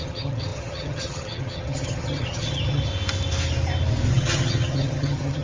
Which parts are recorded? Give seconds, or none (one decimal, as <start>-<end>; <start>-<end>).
2.9-4.1